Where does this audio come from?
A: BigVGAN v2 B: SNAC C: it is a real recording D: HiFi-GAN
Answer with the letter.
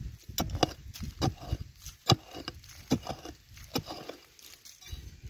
C